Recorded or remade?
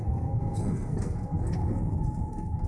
remade